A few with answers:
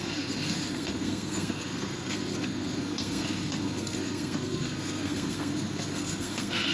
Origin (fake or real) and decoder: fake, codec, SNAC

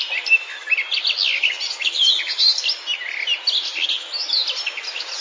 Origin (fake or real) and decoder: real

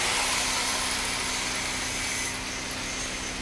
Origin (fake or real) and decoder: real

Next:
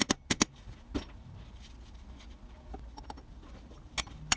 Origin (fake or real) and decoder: real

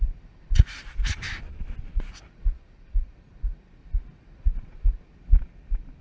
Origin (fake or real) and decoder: real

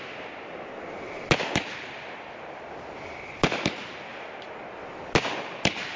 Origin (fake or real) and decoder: real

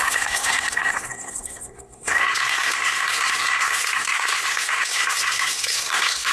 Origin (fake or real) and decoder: fake, codec, SNAC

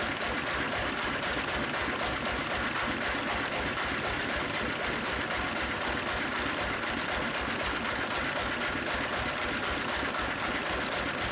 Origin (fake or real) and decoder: real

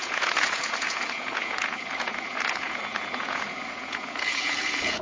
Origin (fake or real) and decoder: fake, vocoder, Vocos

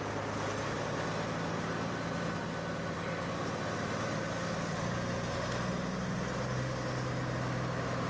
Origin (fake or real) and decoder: real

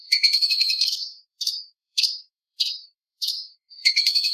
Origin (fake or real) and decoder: fake, codec, SNAC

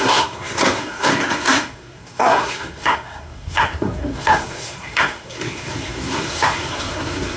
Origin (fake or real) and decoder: fake, codec, SNAC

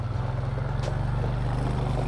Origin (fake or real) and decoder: real